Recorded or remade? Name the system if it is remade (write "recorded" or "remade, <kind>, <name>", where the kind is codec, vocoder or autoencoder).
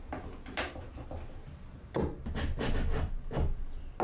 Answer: recorded